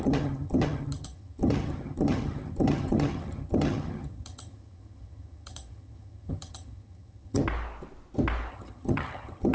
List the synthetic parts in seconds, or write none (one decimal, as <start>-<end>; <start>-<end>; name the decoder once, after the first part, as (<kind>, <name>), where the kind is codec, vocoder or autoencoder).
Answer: 0.0-7.4 (vocoder, HiFi-GAN); 8.5-9.5